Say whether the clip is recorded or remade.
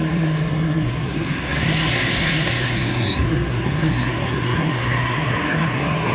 remade